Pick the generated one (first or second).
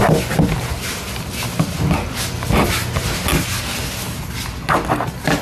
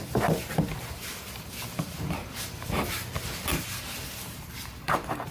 second